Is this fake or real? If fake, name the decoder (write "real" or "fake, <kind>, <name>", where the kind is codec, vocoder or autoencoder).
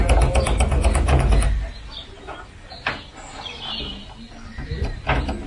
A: real